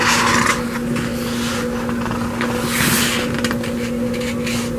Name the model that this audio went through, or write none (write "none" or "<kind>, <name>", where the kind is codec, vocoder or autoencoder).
none